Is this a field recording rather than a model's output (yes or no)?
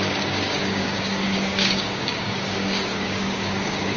no